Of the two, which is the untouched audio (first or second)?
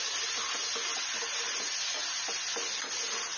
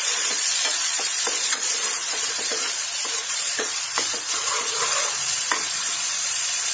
first